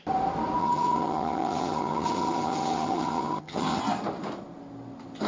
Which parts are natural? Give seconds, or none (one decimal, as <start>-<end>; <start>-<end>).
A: 0.0-0.6; 3.8-5.3